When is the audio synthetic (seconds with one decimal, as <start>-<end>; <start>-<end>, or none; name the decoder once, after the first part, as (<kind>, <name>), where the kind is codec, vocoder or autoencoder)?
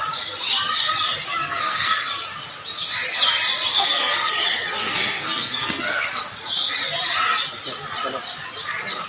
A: 1.5-2.1 (codec, SNAC); 3.7-4.3; 4.8-6.2